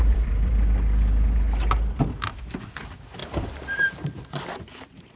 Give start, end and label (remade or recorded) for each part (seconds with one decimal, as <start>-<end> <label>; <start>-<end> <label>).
0.0-0.5 remade; 0.5-2.8 recorded; 2.8-5.2 remade